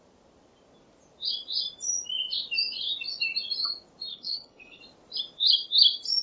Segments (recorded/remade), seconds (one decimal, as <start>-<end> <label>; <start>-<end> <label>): 0.0-4.1 recorded; 4.1-4.8 remade; 4.8-6.2 recorded